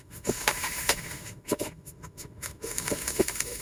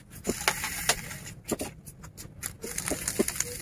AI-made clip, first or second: first